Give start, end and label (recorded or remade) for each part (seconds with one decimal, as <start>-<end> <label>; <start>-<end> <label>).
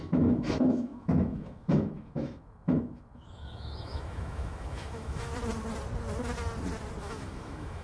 0.0-5.3 remade; 5.3-7.0 recorded; 7.0-7.8 remade